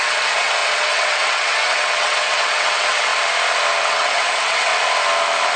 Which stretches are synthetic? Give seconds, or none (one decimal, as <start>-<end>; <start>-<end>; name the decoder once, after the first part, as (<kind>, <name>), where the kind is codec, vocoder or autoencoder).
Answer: 0.0-3.1 (vocoder, WaveNeXt); 3.8-4.7